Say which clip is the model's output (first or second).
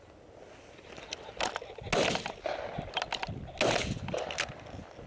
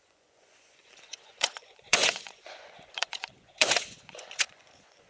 second